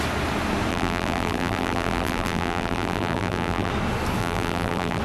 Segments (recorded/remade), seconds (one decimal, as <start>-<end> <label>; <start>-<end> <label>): 0.0-0.7 recorded; 0.7-3.7 remade; 3.7-4.2 recorded; 4.2-5.0 remade

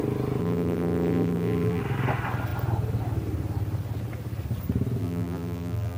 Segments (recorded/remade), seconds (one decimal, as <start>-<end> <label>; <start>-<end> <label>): 0.0-0.4 recorded; 0.4-1.8 remade; 1.8-5.0 recorded; 5.0-6.0 remade